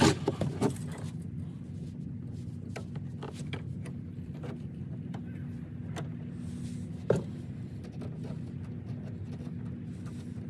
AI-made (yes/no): no